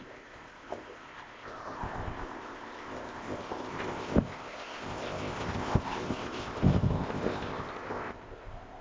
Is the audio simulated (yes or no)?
yes